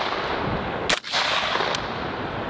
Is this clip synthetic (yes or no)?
no